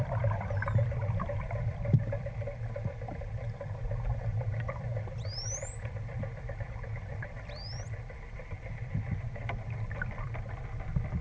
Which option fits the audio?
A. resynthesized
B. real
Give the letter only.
A